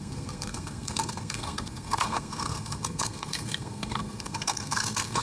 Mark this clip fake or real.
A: fake